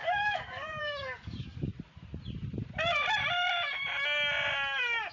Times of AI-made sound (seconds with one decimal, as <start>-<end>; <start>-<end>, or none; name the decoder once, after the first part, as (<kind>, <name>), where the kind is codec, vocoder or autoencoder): 0.0-1.7 (codec, DAC)